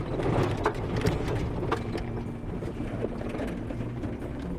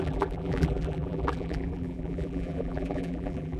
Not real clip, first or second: second